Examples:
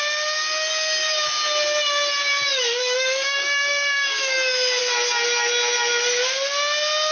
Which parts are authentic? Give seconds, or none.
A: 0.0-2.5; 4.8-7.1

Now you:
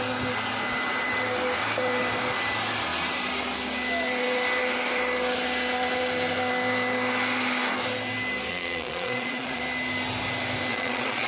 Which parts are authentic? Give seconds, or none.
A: 0.0-8.5; 9.6-10.7

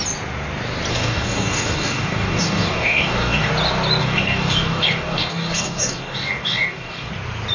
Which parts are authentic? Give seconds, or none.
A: 0.0-0.9; 3.5-4.0; 7.1-7.5

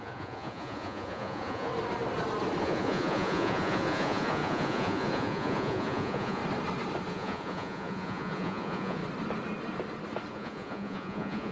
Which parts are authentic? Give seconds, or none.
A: 1.7-2.6; 6.4-7.1; 9.0-10.3

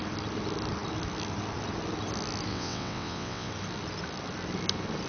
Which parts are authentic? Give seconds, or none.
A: 0.0-2.5; 3.5-5.1